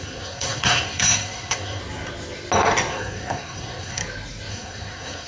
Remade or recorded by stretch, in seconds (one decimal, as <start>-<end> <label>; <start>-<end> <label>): 0.0-1.8 remade; 1.8-2.9 recorded; 2.9-4.0 remade; 4.0-4.5 recorded; 4.5-5.3 remade